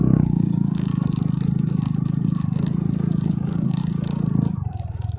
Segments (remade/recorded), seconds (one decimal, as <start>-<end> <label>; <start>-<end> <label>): 0.0-0.9 remade; 0.9-3.3 recorded; 3.3-3.8 remade; 3.8-5.2 recorded